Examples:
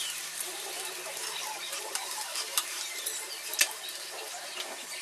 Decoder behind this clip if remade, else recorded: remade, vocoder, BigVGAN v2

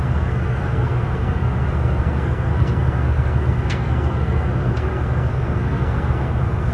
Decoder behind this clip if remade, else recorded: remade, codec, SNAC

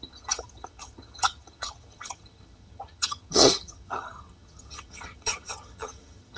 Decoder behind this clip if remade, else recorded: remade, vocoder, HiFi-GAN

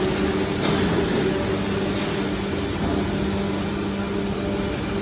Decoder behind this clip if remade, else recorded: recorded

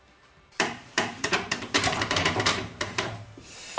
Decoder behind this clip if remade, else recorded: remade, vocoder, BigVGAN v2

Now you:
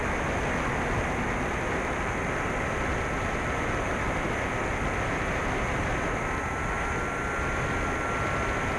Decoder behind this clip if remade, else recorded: recorded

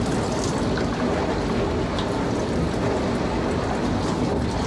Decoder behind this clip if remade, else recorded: recorded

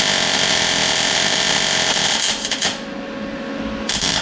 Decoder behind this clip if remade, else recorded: recorded